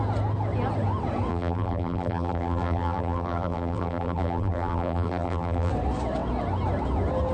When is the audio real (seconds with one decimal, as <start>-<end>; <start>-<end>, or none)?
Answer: 0.0-1.3; 5.7-7.3